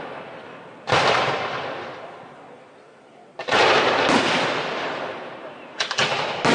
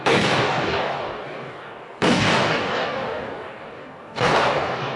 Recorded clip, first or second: first